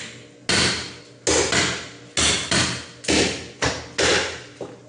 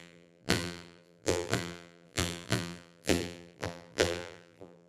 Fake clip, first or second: second